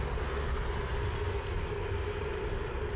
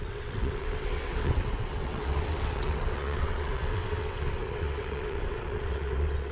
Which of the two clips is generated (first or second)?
second